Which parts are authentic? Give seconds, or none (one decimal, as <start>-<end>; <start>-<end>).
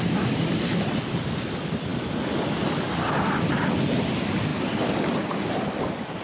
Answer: 0.0-6.2